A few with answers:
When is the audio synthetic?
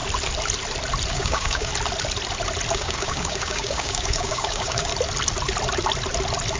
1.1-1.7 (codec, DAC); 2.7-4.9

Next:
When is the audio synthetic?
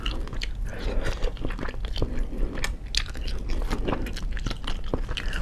none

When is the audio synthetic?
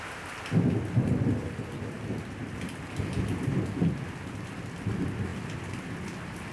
none